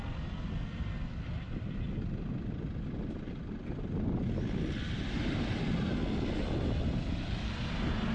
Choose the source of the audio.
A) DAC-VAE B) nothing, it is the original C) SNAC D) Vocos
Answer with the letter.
B